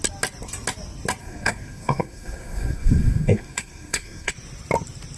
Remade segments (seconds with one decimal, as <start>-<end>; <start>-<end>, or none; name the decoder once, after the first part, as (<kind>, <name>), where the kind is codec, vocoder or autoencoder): 1.2-4.3 (codec, SNAC)